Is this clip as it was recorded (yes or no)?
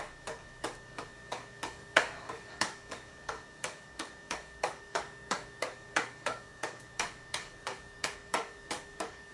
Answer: no